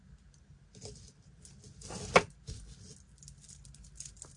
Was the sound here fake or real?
real